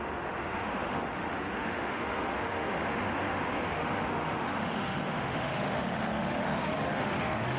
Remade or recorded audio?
remade